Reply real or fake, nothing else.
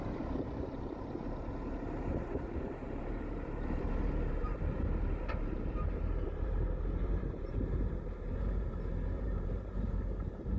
fake